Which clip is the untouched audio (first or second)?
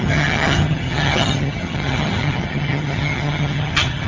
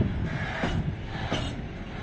second